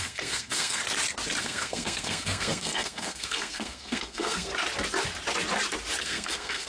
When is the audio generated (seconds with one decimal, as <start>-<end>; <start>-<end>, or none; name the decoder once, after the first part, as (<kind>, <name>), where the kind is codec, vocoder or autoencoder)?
0.0-0.8 (codec, SNAC); 1.4-4.5; 6.0-6.7

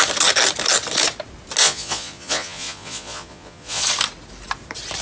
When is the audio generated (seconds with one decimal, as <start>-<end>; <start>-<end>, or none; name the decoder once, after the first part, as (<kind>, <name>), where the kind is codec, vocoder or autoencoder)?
1.6-3.8 (vocoder, Vocos)

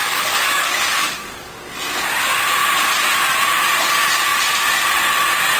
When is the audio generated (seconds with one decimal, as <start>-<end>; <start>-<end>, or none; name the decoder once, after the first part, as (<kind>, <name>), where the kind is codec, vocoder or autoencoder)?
0.0-1.5 (codec, DAC)

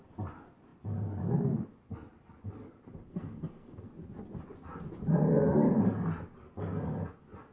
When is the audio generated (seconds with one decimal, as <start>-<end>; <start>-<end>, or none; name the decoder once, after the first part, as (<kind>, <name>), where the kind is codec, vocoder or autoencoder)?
3.1-3.9 (codec, SNAC)

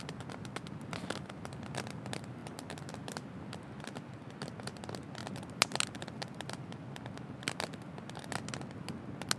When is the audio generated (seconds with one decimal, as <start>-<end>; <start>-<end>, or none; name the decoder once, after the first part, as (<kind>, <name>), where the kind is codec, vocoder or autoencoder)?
none

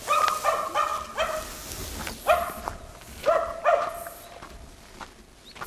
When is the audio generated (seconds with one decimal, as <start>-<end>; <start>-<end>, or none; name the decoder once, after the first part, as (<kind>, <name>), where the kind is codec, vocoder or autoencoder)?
none